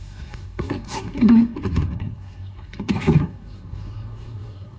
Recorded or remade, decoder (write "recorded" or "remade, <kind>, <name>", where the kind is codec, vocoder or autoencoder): remade, codec, SNAC